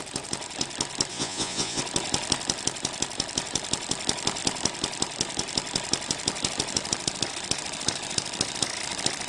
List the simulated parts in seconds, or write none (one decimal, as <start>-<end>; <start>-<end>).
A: 1.1-1.8